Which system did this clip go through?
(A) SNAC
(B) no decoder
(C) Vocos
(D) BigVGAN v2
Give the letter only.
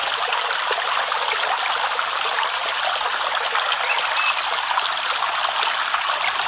B